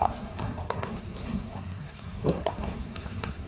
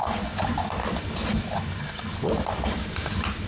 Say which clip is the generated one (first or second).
first